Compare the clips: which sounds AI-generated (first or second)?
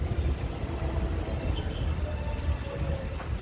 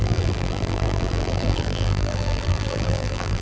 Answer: second